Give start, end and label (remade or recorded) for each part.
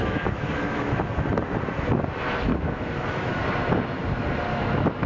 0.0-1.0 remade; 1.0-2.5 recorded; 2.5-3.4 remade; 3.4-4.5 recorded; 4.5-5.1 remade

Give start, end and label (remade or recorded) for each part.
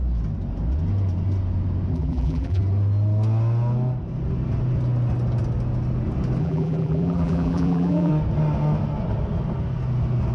0.0-1.9 recorded; 1.9-2.6 remade; 2.6-6.4 recorded; 6.4-8.1 remade; 8.1-10.3 recorded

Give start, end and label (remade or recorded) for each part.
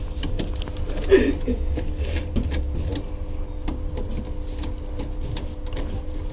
0.0-6.3 recorded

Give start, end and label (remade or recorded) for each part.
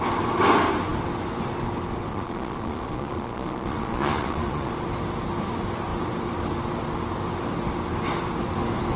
0.0-2.1 recorded; 2.1-4.7 remade; 4.7-9.0 recorded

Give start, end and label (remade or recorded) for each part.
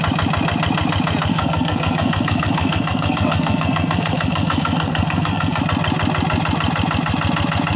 0.0-1.3 recorded; 1.3-5.6 remade; 5.6-7.8 recorded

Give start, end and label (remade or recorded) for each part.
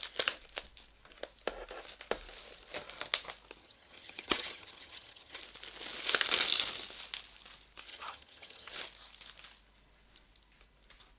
0.0-3.6 recorded; 3.6-5.4 remade; 5.4-7.9 recorded; 7.9-8.7 remade; 8.7-11.2 recorded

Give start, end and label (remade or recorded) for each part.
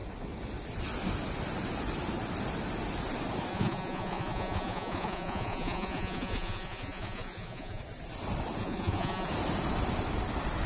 0.0-3.5 recorded; 3.5-7.8 remade; 7.8-8.6 recorded; 8.6-9.3 remade; 9.3-10.7 recorded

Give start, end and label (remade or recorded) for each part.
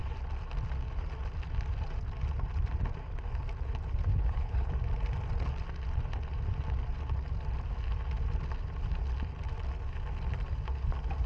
0.0-4.1 recorded; 4.1-4.7 remade; 4.7-11.3 recorded